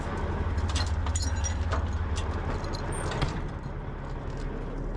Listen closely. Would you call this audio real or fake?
real